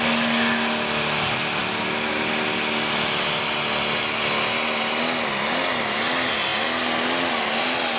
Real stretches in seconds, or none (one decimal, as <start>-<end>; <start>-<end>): 0.0-8.0